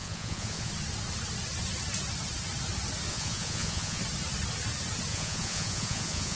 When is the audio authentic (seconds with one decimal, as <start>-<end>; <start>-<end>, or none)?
0.7-3.1; 4.0-5.1